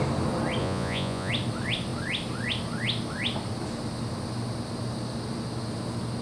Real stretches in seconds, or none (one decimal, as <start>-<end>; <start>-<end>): 0.0-0.6; 1.3-6.2